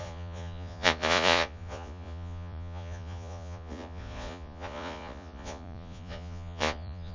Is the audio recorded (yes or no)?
no